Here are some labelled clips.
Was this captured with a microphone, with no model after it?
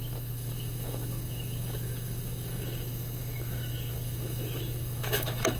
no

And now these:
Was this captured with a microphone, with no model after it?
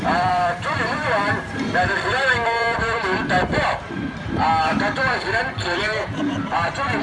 no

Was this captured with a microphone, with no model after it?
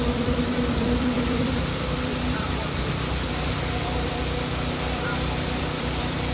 no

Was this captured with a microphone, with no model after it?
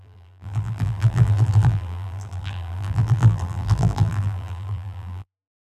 no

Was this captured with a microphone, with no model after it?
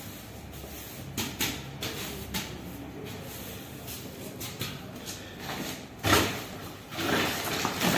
no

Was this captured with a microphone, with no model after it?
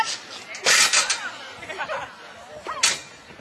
yes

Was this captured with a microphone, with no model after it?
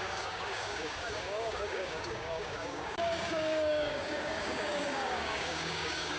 no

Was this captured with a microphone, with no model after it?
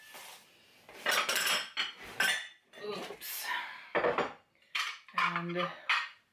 yes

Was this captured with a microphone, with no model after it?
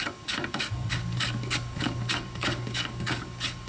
no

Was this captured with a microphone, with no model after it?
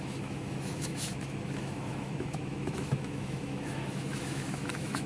no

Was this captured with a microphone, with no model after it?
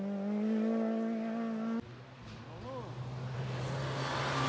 yes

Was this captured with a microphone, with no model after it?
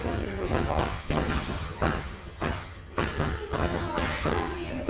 no